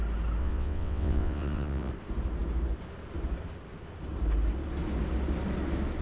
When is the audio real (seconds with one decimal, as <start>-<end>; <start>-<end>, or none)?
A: 0.0-0.4; 1.9-6.0